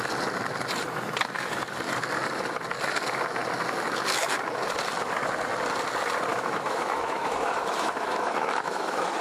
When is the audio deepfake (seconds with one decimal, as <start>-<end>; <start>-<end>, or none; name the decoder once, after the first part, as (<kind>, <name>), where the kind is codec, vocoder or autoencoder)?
6.3-9.2 (autoencoder, DAC-VAE)